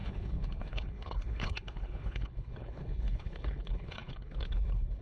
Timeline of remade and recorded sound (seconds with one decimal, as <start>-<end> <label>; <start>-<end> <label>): 0.0-5.0 remade